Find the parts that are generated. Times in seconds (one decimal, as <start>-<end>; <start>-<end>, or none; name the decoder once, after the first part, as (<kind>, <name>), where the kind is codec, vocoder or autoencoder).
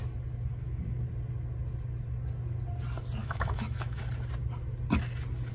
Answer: 0.5-1.0 (autoencoder, DAC-VAE); 3.2-4.0